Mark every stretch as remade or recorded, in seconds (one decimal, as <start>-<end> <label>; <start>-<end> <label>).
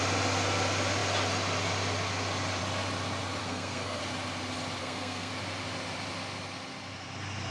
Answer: 0.0-3.4 recorded; 3.4-4.0 remade; 4.0-4.8 recorded; 4.8-5.3 remade; 5.3-7.5 recorded